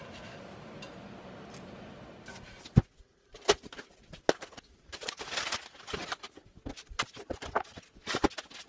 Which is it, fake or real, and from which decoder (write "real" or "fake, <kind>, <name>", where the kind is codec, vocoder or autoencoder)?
real